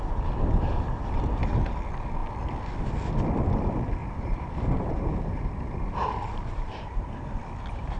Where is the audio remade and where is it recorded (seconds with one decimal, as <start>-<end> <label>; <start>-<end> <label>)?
0.0-4.0 recorded; 4.0-7.4 remade; 7.4-8.0 recorded